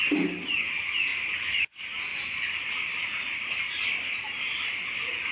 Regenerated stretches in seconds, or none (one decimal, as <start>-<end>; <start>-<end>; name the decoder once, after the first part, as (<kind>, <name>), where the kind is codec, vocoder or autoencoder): 2.1-3.6 (vocoder, BigVGAN v2)

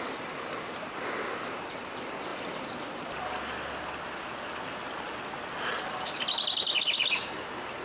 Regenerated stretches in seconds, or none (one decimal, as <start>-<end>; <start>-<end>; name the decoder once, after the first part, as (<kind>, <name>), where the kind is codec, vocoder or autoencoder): none

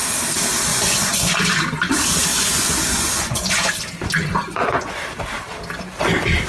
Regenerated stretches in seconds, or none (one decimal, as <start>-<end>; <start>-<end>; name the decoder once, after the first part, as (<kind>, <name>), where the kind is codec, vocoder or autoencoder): 0.7-1.3 (vocoder, Vocos); 2.3-3.7; 4.5-5.0

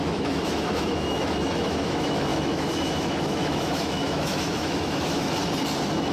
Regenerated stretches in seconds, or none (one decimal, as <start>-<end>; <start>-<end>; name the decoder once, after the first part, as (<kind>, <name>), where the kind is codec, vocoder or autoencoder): 0.0-5.4 (autoencoder, DAC-VAE)

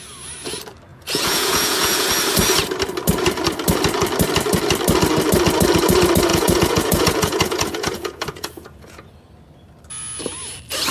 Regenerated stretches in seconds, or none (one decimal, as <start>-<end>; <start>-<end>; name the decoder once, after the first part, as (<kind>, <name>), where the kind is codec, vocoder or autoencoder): 0.9-2.1 (vocoder, Vocos); 6.3-9.1

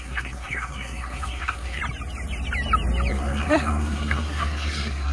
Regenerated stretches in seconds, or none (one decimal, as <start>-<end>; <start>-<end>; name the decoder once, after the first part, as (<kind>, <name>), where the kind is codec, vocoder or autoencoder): 0.0-1.8 (codec, SNAC); 3.1-5.1

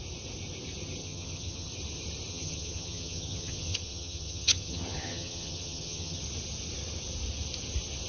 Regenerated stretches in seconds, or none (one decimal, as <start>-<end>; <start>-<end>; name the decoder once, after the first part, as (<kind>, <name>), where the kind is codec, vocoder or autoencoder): 1.0-1.7 (vocoder, HiFi-GAN); 2.3-6.2

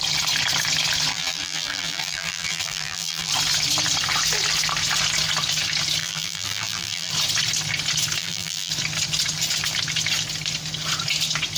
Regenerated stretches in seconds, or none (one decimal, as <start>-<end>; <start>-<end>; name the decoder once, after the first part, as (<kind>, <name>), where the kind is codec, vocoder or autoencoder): 1.1-3.3 (vocoder, BigVGAN v2); 6.0-7.1; 8.2-8.7